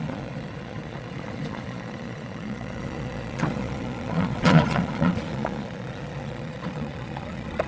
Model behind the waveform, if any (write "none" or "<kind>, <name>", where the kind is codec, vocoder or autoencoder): vocoder, Vocos